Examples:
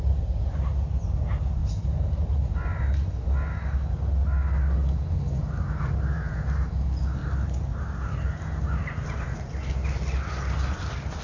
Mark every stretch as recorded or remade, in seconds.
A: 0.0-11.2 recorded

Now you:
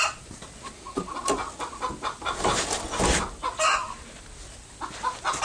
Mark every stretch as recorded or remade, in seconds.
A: 0.0-5.4 recorded

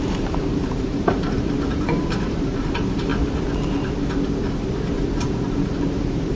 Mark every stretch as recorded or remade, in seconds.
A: 0.0-3.1 remade; 3.1-5.8 recorded; 5.8-6.3 remade

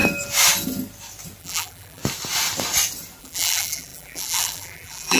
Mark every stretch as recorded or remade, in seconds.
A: 0.0-1.4 recorded; 1.4-2.0 remade; 2.0-3.2 recorded; 3.2-5.2 remade

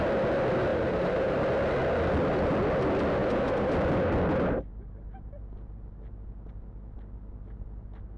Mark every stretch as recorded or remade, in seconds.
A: 0.0-0.7 recorded; 0.7-1.4 remade; 1.4-3.2 recorded; 3.2-3.7 remade; 3.7-4.7 recorded; 4.7-5.4 remade; 5.4-8.2 recorded

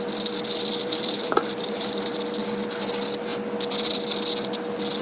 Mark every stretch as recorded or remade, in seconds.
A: 0.0-0.8 recorded; 0.8-2.1 remade; 2.1-5.0 recorded

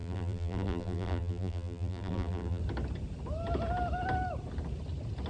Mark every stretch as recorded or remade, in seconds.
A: 0.0-2.6 remade; 2.6-5.3 recorded